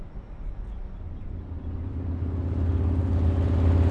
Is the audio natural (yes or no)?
yes